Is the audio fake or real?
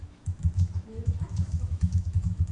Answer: fake